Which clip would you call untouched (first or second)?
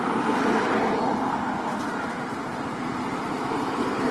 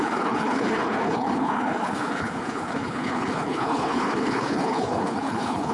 first